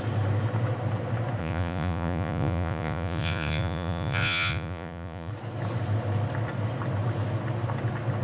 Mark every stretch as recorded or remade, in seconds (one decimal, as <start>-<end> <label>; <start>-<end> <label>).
0.0-1.4 recorded; 1.4-5.3 remade; 5.3-8.2 recorded